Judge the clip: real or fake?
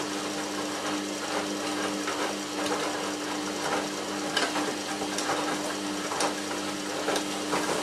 real